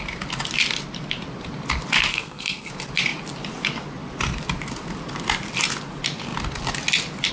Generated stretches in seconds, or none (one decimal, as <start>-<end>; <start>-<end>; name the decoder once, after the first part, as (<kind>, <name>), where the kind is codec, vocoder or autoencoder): 2.1-2.7 (codec, SNAC)